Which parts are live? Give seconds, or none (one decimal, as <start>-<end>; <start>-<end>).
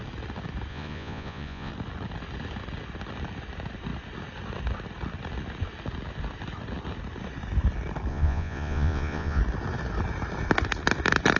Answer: 0.0-0.7; 1.7-8.1; 9.4-11.4